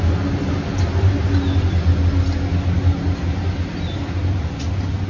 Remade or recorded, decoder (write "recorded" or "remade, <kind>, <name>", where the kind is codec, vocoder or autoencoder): recorded